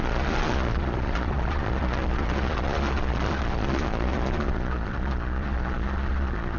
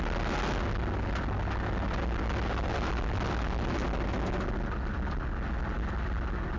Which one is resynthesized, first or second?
first